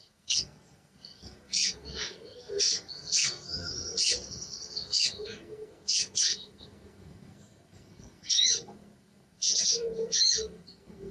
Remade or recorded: remade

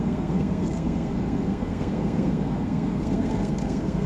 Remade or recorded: remade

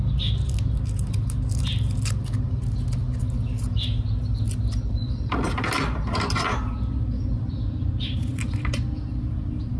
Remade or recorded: recorded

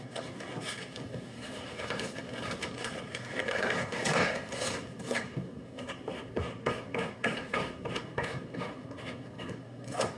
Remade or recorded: remade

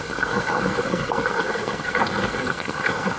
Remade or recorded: remade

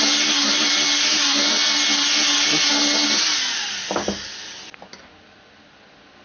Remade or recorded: recorded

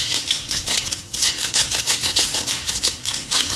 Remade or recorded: remade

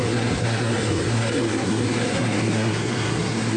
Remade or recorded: remade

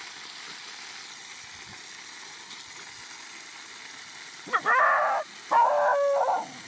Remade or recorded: recorded